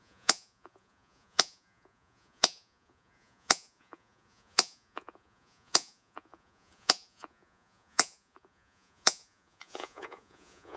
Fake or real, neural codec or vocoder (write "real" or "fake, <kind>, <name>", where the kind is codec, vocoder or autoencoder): fake, vocoder, Vocos